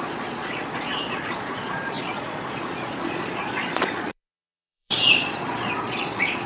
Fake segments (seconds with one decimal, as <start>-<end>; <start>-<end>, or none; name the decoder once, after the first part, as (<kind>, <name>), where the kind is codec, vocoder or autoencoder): 0.0-6.5 (vocoder, Vocos)